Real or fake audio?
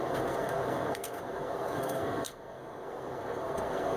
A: fake